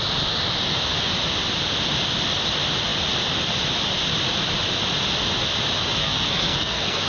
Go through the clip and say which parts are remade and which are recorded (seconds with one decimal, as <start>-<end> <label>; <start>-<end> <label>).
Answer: 0.0-6.0 recorded; 6.0-7.1 remade